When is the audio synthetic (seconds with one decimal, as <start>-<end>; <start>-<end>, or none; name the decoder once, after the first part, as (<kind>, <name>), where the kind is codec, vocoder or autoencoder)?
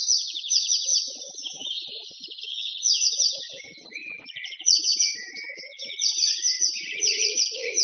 0.0-7.8 (vocoder, Vocos)